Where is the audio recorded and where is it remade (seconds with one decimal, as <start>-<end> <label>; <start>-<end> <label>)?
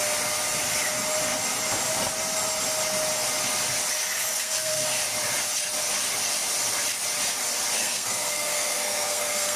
0.0-4.3 recorded; 4.3-5.0 remade; 5.0-7.8 recorded; 7.8-9.6 remade